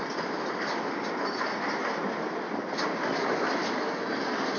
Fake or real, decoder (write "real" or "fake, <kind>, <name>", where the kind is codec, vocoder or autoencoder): real